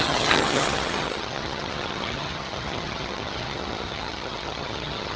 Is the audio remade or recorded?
remade